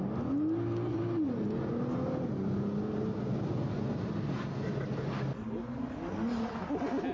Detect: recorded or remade recorded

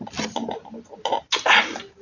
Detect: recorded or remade recorded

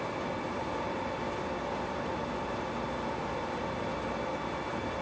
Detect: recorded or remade recorded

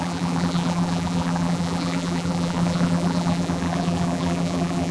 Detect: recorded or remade remade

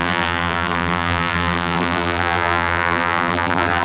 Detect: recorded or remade remade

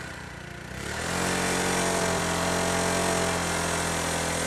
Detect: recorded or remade recorded